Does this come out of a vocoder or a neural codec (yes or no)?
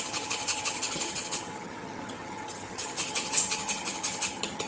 yes